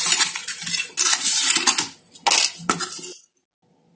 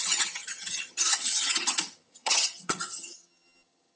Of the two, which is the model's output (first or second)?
second